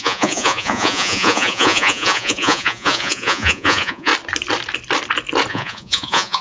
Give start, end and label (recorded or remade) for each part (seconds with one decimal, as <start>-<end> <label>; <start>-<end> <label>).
0.0-4.1 remade; 4.1-5.5 recorded; 5.5-6.4 remade